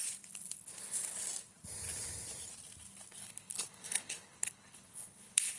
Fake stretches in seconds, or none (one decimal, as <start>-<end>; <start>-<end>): 3.2-5.6

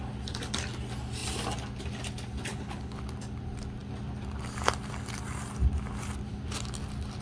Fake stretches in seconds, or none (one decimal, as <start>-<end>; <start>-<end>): 2.5-3.0

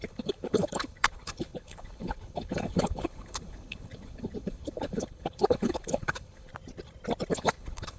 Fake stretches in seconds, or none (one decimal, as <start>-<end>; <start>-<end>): 0.0-6.5; 7.3-8.0